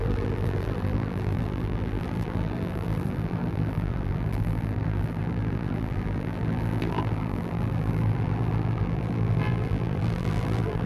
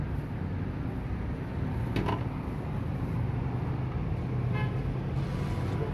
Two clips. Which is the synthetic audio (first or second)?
first